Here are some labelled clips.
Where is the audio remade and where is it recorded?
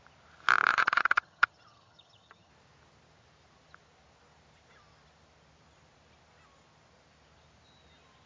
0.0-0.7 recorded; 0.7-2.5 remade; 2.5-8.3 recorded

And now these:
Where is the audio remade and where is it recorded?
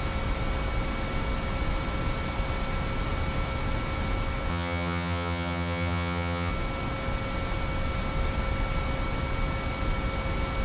0.0-4.5 recorded; 4.5-6.5 remade; 6.5-10.6 recorded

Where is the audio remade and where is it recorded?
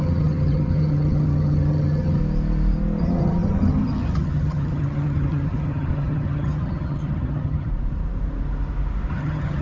0.0-2.2 remade; 2.2-3.0 recorded; 3.0-7.7 remade; 7.7-9.1 recorded; 9.1-9.6 remade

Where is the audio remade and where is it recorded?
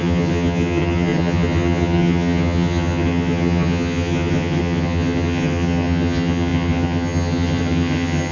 0.0-8.3 remade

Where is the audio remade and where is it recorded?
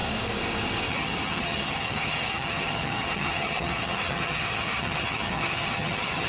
0.0-0.9 recorded; 0.9-6.3 remade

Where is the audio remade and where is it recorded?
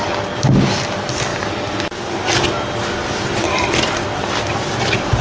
0.0-5.2 recorded